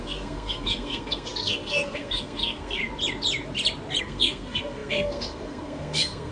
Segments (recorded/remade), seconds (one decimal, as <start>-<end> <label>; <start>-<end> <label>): 0.0-2.8 remade; 2.8-4.0 recorded; 4.0-6.3 remade